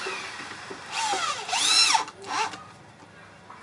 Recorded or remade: recorded